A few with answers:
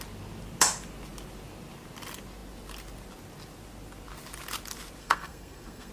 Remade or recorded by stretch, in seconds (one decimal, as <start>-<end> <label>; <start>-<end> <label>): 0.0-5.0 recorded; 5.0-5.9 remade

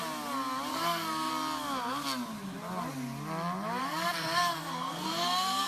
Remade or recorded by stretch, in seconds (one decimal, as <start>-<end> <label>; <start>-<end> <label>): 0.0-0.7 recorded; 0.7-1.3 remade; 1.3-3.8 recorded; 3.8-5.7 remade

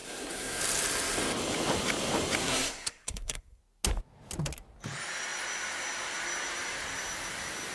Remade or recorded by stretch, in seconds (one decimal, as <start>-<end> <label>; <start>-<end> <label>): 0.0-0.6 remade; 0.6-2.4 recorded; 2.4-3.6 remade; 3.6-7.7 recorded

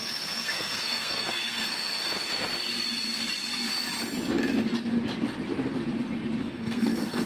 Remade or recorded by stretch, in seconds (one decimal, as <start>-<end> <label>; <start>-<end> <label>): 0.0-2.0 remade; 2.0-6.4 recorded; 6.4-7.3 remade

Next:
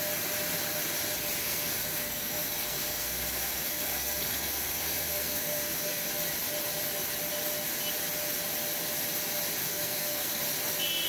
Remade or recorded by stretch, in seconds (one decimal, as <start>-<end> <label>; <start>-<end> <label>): 0.0-1.4 recorded; 1.4-6.1 remade; 6.1-9.6 recorded; 9.6-10.4 remade; 10.4-11.1 recorded

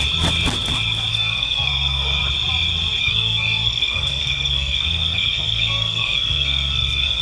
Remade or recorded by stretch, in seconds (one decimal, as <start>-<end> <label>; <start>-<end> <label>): 0.0-1.1 recorded; 1.1-2.2 remade; 2.2-3.0 recorded; 3.0-7.2 remade

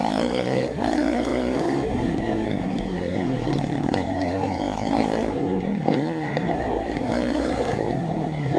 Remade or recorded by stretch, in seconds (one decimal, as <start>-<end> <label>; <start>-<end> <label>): 0.0-8.6 remade